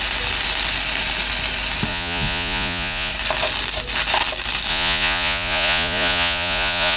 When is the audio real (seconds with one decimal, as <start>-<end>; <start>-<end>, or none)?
0.0-1.9; 3.1-4.7